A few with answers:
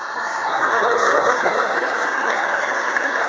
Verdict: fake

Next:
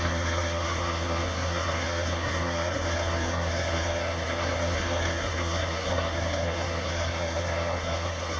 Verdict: fake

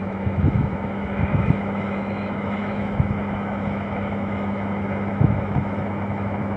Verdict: fake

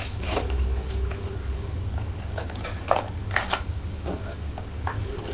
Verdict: fake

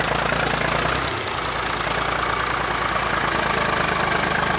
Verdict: real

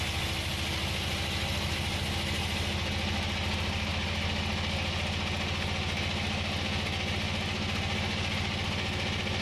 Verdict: real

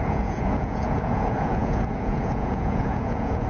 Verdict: fake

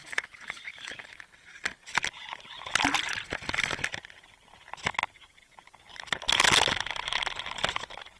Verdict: real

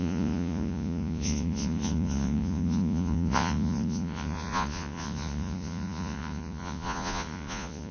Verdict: fake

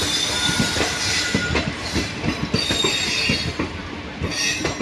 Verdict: real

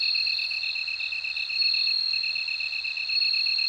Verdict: real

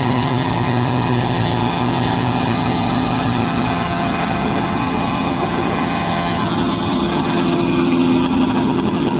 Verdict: fake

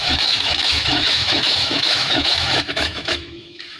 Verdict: fake